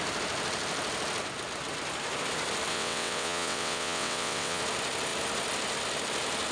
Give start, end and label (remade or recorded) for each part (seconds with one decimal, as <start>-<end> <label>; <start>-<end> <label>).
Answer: 0.0-2.7 recorded; 2.7-4.6 remade; 4.6-6.5 recorded